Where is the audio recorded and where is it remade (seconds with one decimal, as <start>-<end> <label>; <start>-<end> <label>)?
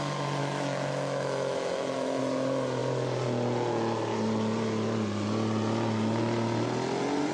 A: 0.0-0.4 recorded; 0.4-2.2 remade; 2.2-7.3 recorded